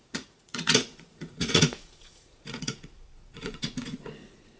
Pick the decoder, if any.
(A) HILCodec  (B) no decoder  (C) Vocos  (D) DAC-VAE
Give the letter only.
C